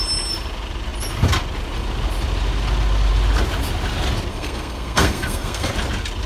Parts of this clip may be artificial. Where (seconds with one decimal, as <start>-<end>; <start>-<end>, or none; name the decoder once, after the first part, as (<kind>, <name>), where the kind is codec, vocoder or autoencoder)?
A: 4.3-5.7 (codec, SNAC)